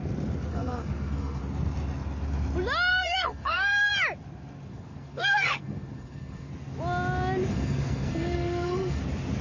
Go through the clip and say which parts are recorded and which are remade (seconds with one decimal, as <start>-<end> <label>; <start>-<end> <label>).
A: 0.0-0.5 recorded; 0.5-1.4 remade; 1.4-2.9 recorded; 2.9-3.9 remade; 3.9-4.7 recorded; 4.7-6.5 remade; 6.5-7.5 recorded; 7.5-9.0 remade; 9.0-9.4 recorded